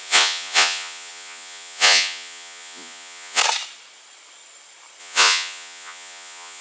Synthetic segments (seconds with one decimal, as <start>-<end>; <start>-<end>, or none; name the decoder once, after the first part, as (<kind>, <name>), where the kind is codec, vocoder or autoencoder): 0.0-3.4 (vocoder, Vocos); 5.0-6.6